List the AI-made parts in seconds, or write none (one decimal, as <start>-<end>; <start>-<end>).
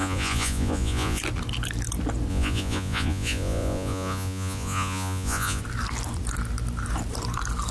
0.0-1.2; 2.3-5.6